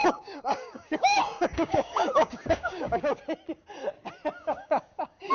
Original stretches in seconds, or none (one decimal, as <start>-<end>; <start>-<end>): 3.2-4.4